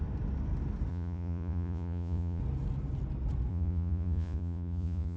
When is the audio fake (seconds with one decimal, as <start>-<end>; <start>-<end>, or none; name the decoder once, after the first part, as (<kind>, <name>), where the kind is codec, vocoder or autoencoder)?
0.9-2.4 (vocoder, Vocos); 3.5-5.2